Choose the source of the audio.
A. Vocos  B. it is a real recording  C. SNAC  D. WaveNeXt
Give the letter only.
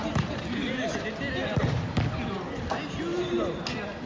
B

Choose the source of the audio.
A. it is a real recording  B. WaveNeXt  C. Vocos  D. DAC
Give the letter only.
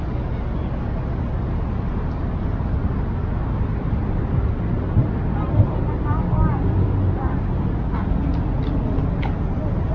A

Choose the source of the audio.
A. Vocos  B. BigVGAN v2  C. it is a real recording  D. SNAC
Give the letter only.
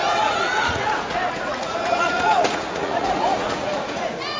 A